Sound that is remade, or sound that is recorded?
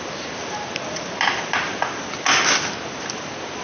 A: recorded